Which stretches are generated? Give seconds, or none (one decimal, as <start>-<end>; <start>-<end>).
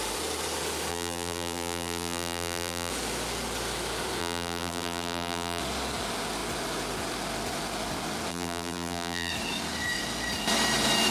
0.9-2.9; 4.2-5.6; 8.3-9.3